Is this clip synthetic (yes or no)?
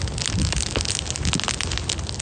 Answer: no